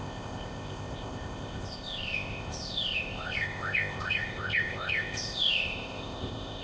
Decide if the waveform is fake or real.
fake